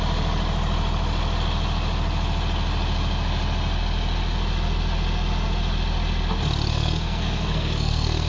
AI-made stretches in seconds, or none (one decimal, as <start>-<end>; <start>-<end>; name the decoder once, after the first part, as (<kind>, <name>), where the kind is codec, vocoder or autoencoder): 6.7-8.3 (codec, SNAC)